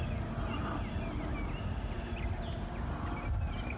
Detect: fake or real real